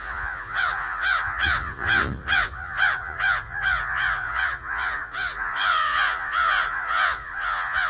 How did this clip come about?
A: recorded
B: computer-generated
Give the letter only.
B